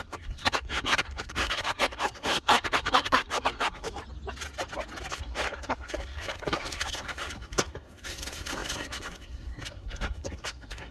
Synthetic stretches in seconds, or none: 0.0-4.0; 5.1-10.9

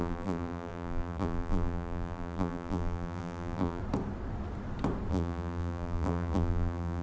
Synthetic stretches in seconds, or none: 0.0-3.8; 5.1-7.0